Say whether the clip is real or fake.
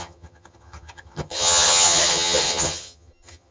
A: fake